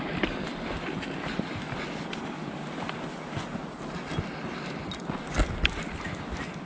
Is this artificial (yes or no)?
no